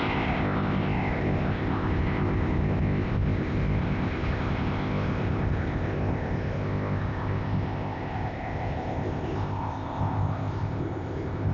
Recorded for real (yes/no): no